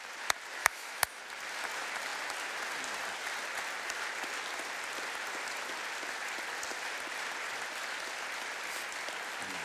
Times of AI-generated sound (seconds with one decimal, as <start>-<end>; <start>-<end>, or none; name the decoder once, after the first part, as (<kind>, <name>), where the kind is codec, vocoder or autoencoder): 0.6-1.2 (autoencoder, DAC-VAE)